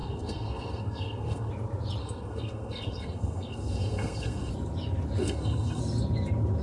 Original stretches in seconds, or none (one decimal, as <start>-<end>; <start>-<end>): 1.5-2.0; 4.5-5.2; 5.8-6.6